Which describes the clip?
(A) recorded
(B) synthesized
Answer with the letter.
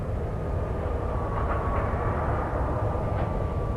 A